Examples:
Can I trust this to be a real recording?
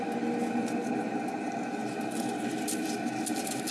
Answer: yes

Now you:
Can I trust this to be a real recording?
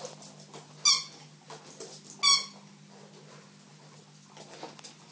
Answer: yes